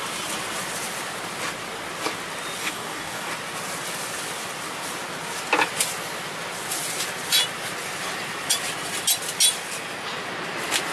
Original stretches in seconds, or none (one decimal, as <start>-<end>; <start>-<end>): 0.0-2.6; 3.3-10.9